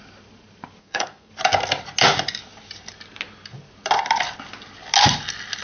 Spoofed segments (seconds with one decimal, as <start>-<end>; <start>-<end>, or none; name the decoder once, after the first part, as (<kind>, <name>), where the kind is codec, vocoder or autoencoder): 0.8-1.3 (codec, SNAC)